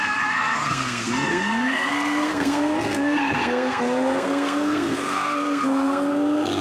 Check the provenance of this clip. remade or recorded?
remade